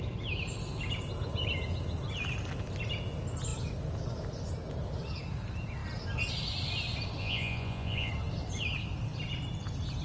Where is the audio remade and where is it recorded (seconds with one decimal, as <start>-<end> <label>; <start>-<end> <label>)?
0.0-7.2 recorded; 7.2-8.1 remade; 8.1-10.0 recorded